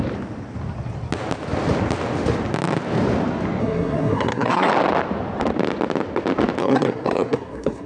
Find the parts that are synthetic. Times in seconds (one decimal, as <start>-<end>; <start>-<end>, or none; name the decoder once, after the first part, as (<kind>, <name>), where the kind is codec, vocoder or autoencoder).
3.6-4.7 (codec, SNAC); 6.6-7.9